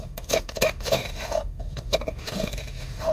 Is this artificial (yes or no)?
yes